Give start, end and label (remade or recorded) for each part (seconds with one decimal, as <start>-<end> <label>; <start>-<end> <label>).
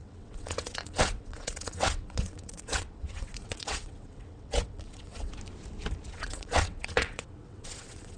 0.0-5.3 remade; 5.3-6.1 recorded; 6.1-8.2 remade